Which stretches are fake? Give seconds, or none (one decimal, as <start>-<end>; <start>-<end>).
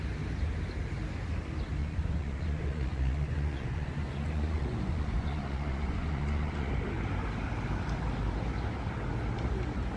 1.8-6.7